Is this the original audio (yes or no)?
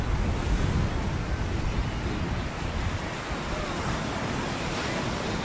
yes